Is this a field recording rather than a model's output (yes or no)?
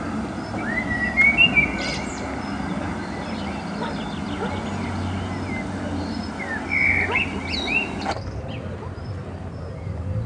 yes